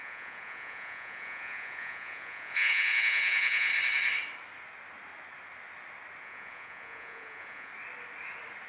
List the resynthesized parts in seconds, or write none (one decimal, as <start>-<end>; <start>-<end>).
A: 0.0-3.7; 6.2-7.7